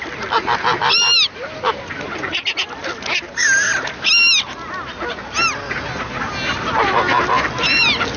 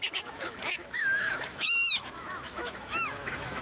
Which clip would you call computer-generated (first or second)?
second